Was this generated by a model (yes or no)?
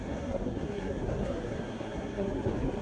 yes